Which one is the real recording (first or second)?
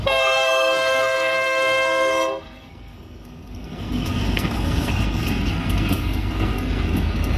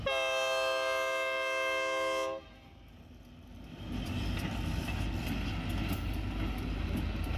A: second